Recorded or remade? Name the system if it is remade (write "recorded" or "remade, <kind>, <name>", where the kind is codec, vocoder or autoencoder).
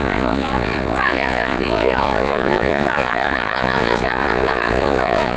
remade, vocoder, Vocos